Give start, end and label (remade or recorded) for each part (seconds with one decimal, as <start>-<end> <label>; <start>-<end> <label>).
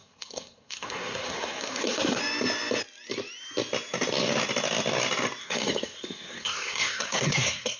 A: 0.0-2.2 remade; 2.2-5.4 recorded; 5.4-7.8 remade